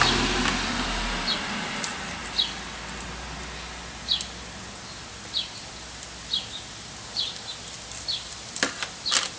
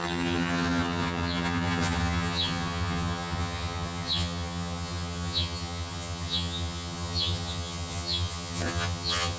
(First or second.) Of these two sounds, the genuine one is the first